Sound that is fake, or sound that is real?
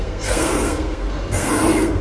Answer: fake